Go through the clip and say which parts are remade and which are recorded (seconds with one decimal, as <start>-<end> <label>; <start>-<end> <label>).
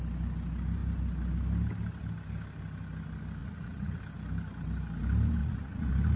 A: 0.0-3.4 recorded; 3.4-4.0 remade; 4.0-5.4 recorded; 5.4-6.2 remade